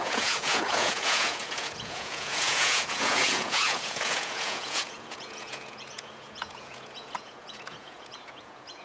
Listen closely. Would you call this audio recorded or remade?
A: remade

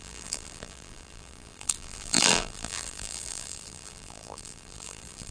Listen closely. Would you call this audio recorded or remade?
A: remade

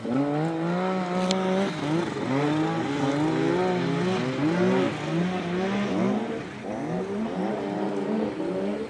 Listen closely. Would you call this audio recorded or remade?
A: recorded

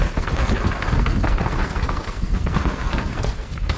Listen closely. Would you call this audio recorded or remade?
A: remade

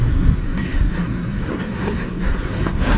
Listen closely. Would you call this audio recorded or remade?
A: remade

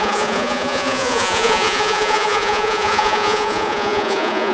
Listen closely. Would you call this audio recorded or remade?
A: remade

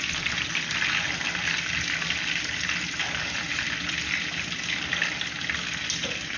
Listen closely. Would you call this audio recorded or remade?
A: recorded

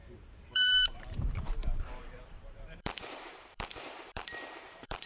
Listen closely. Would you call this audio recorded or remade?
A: remade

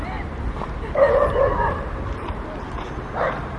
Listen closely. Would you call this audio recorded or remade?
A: remade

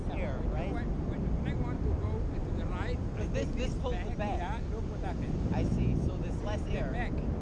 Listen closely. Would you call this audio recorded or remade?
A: recorded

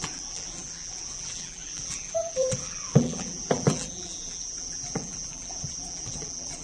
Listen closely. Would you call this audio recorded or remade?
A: remade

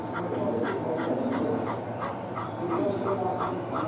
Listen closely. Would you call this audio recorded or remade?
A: remade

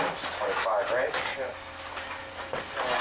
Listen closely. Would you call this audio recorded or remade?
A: recorded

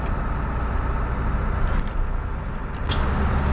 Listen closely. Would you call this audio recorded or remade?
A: recorded